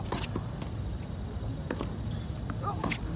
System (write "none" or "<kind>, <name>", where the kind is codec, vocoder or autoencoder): none